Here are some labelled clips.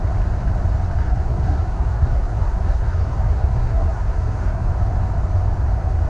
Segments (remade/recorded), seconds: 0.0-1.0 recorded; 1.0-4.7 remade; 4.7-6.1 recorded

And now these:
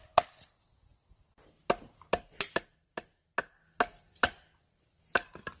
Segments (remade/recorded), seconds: 0.0-5.6 recorded